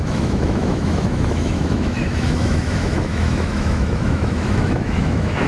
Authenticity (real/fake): fake